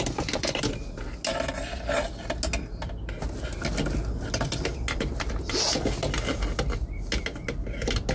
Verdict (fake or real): real